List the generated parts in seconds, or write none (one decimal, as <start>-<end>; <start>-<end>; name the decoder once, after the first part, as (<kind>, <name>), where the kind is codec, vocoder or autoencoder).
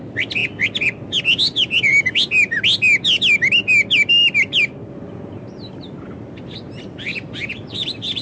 none